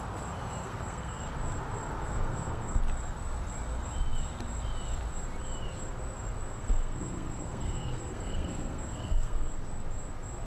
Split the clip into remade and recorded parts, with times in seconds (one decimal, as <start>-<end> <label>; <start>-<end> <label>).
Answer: 0.0-0.6 recorded; 0.6-1.2 remade; 1.2-2.0 recorded; 2.0-2.8 remade; 2.8-6.5 recorded; 6.5-9.5 remade; 9.5-10.5 recorded